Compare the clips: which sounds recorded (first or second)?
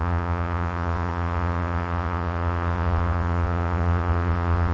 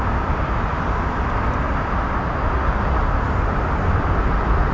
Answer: second